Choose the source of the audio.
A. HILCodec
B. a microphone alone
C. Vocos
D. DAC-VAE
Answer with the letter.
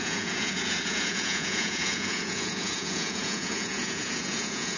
C